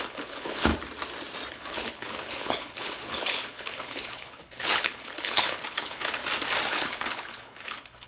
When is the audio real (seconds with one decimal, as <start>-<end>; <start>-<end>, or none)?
0.7-1.5; 6.2-6.7